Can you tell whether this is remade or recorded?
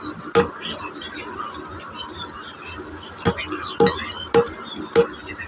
recorded